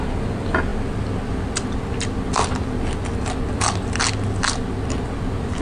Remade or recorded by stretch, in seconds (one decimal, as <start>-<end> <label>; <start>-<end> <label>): 0.0-5.6 recorded